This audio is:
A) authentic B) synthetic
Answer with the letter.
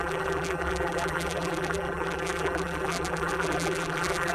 B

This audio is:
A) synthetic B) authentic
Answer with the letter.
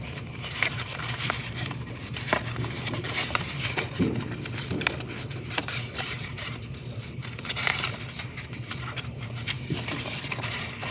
A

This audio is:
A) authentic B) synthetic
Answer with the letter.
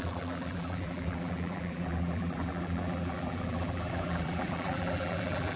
B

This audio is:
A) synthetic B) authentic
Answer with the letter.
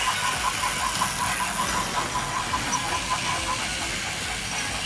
B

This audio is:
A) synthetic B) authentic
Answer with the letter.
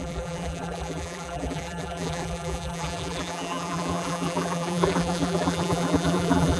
A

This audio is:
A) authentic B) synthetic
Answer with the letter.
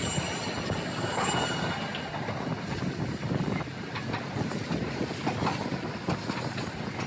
A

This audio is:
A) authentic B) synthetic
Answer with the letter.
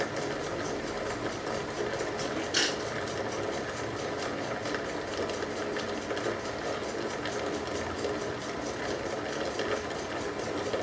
A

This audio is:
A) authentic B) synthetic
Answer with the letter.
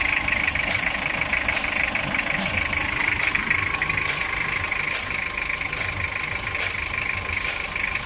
B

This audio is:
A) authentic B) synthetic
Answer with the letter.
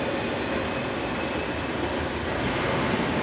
B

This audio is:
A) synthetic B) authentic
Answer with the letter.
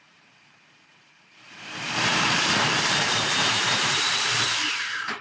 A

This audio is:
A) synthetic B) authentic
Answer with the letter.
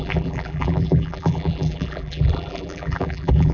A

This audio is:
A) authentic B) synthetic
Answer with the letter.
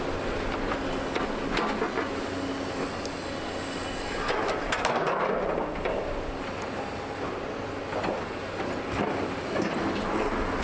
A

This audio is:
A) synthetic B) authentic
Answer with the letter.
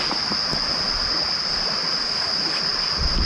B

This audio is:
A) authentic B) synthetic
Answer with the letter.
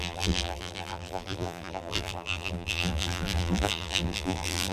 B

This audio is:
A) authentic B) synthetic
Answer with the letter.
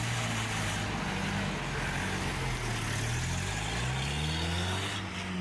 A